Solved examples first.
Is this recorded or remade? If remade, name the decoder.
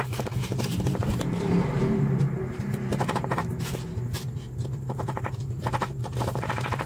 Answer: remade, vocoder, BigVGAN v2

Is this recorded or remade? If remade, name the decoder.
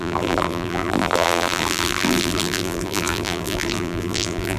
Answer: remade, vocoder, BigVGAN v2